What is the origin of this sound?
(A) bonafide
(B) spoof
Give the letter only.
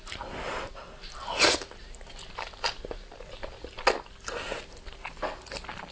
A